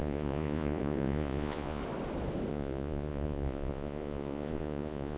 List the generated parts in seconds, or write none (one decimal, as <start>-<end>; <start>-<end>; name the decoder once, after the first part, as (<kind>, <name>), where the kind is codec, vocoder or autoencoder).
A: 0.0-1.8 (vocoder, Vocos); 2.5-5.2